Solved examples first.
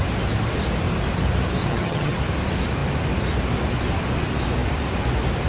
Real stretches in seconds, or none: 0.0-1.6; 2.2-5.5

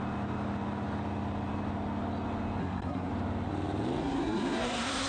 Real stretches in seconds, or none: 0.0-2.6; 3.1-4.0

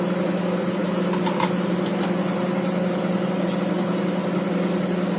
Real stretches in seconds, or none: 0.0-5.2